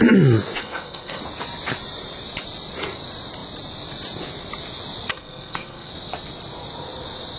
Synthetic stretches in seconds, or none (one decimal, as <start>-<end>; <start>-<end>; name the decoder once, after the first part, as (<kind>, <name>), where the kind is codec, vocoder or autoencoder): 0.6-1.2 (codec, SNAC); 5.1-5.9